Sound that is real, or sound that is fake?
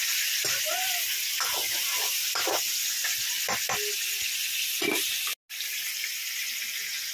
real